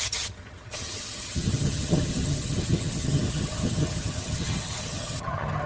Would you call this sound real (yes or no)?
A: no